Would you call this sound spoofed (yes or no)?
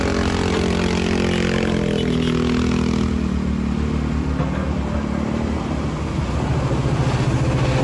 no